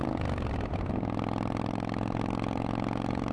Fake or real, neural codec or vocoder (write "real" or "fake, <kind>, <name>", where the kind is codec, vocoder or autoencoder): real